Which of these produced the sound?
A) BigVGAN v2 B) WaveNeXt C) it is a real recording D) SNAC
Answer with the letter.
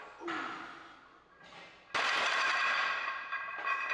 C